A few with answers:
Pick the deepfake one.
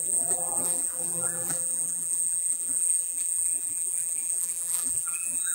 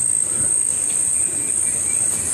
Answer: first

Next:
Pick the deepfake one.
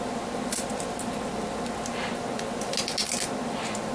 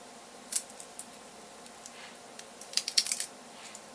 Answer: second